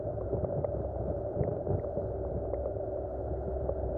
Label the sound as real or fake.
fake